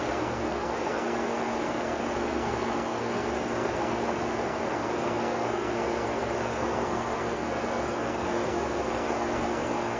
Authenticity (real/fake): fake